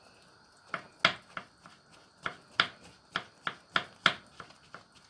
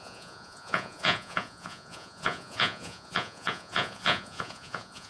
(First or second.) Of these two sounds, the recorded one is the first